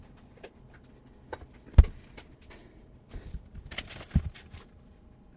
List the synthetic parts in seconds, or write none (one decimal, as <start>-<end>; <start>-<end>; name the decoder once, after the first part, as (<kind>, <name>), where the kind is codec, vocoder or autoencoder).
2.6-3.5 (vocoder, BigVGAN v2)